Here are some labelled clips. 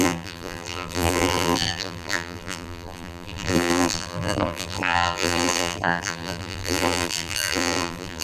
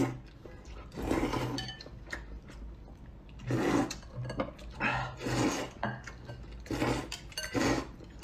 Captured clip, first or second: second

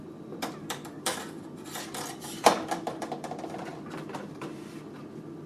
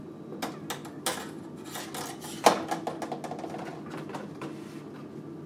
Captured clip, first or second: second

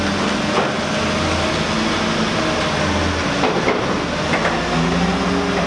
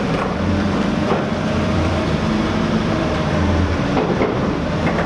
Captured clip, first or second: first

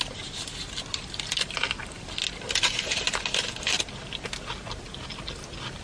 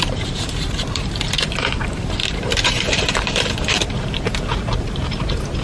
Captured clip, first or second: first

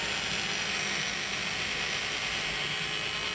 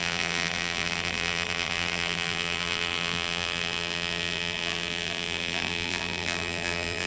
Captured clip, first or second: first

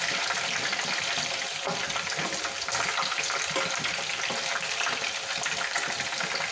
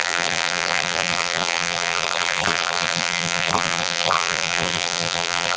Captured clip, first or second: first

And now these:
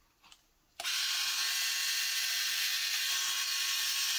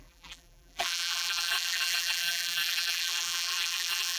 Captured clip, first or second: first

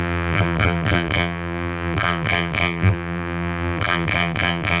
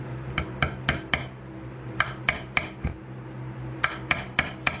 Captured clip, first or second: second